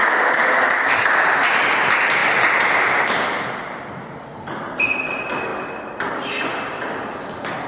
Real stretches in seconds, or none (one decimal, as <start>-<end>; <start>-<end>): 1.1-7.7